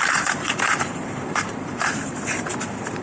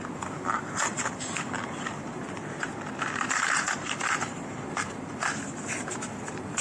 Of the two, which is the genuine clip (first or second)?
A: second